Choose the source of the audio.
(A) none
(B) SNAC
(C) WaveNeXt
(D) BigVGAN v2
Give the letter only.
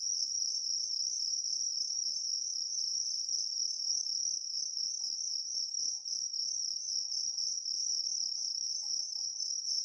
D